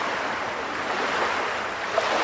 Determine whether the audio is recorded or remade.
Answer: recorded